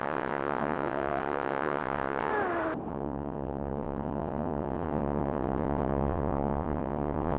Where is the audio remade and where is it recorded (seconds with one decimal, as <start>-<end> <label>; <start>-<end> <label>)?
0.0-2.3 remade; 2.3-2.9 recorded; 2.9-7.4 remade